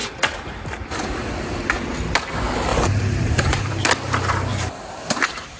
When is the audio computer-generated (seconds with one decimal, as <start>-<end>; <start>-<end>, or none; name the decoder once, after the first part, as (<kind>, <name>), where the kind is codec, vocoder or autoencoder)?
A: 0.0-1.3 (vocoder, BigVGAN v2); 2.7-3.8; 4.5-5.6